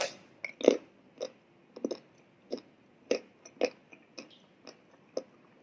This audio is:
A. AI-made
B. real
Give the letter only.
B